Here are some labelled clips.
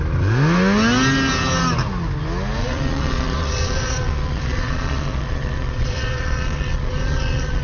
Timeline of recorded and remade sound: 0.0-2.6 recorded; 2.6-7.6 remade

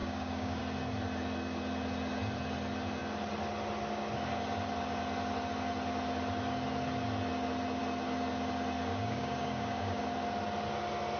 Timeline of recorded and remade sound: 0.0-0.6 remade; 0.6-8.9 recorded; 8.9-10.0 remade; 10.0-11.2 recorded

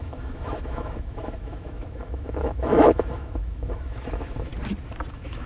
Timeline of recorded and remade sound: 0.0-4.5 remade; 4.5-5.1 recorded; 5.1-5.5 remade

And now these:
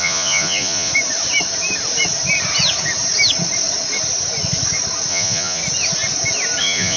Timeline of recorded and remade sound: 0.0-0.9 remade; 0.9-5.1 recorded; 5.1-5.6 remade; 5.6-6.6 recorded; 6.6-7.0 remade